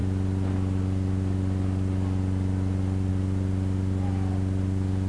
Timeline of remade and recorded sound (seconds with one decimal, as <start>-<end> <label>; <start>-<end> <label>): 0.0-5.1 recorded